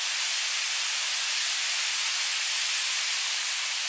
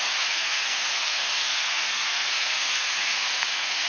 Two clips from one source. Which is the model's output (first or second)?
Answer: second